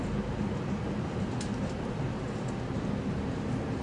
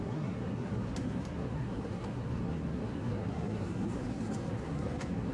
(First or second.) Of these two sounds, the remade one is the second